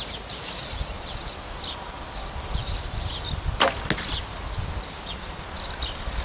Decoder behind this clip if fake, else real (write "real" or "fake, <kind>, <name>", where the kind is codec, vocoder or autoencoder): real